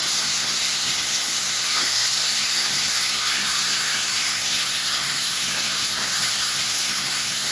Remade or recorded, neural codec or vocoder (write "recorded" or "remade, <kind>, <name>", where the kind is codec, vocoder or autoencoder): remade, codec, SNAC